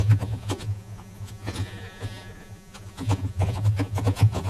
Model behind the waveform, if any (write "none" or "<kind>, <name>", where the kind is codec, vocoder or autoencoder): vocoder, Vocos